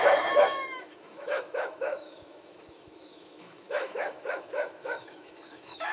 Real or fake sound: fake